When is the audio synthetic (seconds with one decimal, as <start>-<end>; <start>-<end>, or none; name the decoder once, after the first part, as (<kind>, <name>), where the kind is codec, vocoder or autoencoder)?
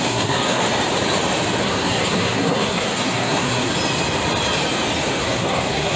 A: 0.0-0.6 (codec, SNAC); 1.6-3.7; 5.2-6.0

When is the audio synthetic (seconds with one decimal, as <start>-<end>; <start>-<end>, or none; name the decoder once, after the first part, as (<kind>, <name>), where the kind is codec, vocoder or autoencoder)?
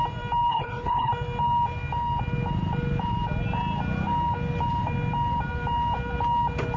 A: 0.5-1.1 (codec, HILCodec)